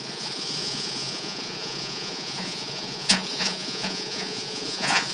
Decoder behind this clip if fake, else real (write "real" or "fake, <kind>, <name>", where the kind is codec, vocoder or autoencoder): fake, vocoder, Vocos